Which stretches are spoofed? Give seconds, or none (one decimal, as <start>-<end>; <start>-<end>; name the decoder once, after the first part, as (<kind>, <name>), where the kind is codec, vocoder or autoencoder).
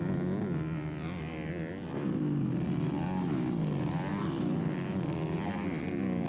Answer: none